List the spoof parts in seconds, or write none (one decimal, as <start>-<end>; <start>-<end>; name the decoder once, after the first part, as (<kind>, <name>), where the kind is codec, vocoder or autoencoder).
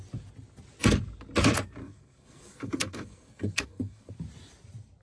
1.8-4.1 (codec, SNAC)